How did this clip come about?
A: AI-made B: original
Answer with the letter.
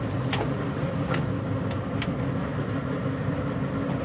B